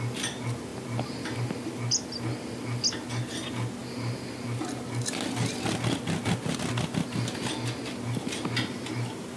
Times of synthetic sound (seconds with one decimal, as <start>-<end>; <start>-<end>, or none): none